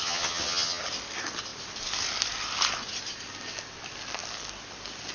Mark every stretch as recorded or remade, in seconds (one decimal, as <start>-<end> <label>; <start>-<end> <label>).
0.0-0.8 remade; 0.8-5.1 recorded